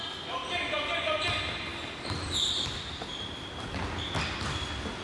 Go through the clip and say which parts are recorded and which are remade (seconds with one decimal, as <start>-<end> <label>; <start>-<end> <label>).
0.0-5.0 recorded